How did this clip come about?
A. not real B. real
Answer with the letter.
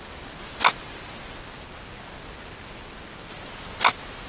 B